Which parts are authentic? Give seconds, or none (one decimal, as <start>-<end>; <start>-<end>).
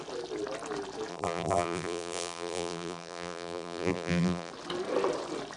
0.0-1.1; 4.5-5.6